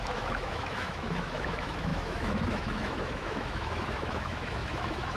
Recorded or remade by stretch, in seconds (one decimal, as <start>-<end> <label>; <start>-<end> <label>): 0.0-5.2 remade

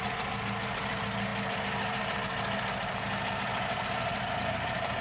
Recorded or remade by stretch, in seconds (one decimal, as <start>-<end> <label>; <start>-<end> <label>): 0.0-5.0 recorded

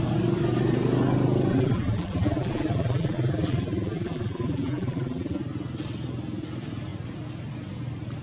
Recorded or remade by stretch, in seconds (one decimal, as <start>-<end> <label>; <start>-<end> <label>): 0.0-1.5 recorded; 1.5-5.4 remade; 5.4-8.2 recorded

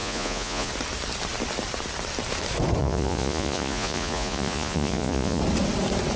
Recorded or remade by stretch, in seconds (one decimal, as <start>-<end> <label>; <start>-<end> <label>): 0.0-0.7 remade; 0.7-2.8 recorded; 2.8-5.4 remade; 5.4-6.2 recorded

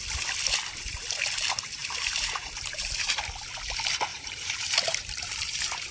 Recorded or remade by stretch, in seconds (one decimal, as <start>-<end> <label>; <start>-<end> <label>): 0.0-1.8 recorded; 1.8-3.2 remade; 3.2-4.1 recorded; 4.1-5.9 remade

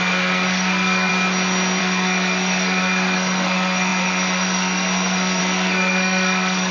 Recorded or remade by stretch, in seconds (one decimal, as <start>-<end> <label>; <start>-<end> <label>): 0.0-1.1 remade; 1.1-1.8 recorded; 1.8-6.7 remade

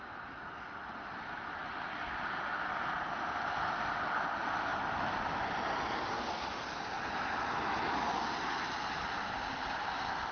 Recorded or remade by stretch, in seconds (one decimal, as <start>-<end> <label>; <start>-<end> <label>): 0.0-10.3 recorded

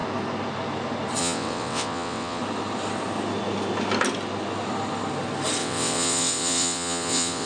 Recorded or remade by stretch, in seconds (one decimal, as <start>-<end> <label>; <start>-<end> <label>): 0.0-1.2 recorded; 1.2-2.4 remade; 2.4-5.6 recorded; 5.6-7.5 remade